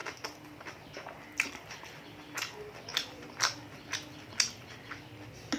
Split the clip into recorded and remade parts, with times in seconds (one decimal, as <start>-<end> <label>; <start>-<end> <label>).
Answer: 0.0-5.6 recorded